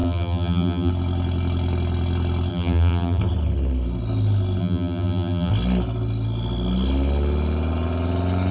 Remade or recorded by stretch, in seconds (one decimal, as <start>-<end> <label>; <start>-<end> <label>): 0.0-0.9 remade; 0.9-2.5 recorded; 2.5-3.2 remade; 3.2-4.6 recorded; 4.6-5.5 remade; 5.5-8.5 recorded